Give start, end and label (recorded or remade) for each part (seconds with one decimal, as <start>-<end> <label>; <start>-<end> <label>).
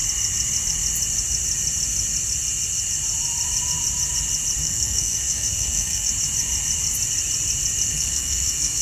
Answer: 0.0-4.6 recorded; 4.6-6.1 remade; 6.1-7.9 recorded; 7.9-8.8 remade